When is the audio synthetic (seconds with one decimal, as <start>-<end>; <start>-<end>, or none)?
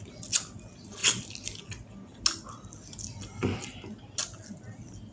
none